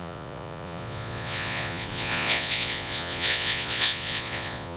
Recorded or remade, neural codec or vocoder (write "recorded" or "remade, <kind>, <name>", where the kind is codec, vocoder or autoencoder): remade, vocoder, Vocos